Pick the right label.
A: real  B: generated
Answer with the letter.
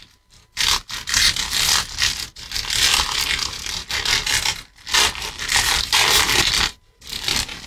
A